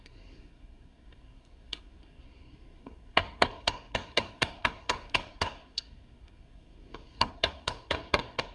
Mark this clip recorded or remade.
remade